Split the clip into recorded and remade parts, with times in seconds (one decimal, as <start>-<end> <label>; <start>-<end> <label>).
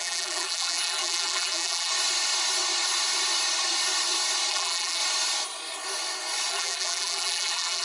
0.0-1.9 remade; 1.9-4.5 recorded; 4.5-5.0 remade; 5.0-6.5 recorded; 6.5-7.8 remade